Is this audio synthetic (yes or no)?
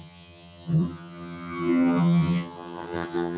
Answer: yes